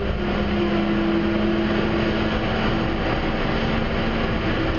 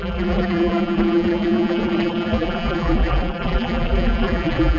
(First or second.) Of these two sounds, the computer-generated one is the second